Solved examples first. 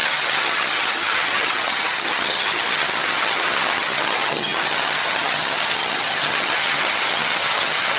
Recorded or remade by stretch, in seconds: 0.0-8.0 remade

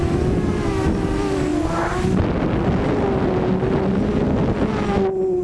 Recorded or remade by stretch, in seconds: 0.0-5.4 recorded

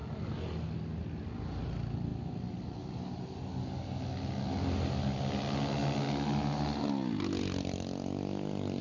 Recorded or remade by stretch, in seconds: 0.0-8.8 recorded

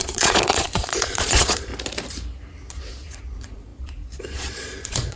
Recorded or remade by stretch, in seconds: 0.0-1.7 remade; 1.7-2.7 recorded; 2.7-5.2 remade

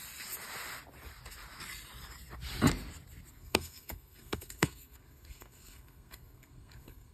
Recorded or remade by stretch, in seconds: 0.0-3.3 recorded; 3.3-7.1 remade

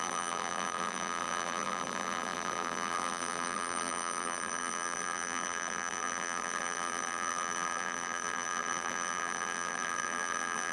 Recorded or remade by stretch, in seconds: 0.0-10.7 remade

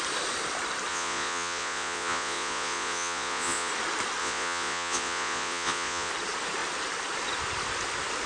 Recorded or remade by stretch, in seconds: 0.0-0.9 recorded; 0.9-3.7 remade; 3.7-4.2 recorded; 4.2-6.1 remade; 6.1-8.3 recorded